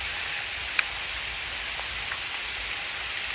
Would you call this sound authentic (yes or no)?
yes